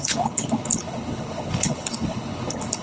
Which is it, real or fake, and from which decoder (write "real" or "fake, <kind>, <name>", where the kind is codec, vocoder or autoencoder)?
fake, codec, HILCodec